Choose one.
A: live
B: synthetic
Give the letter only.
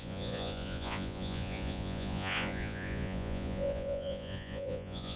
B